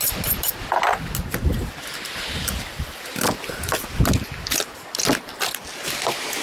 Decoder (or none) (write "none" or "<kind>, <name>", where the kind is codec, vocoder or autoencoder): none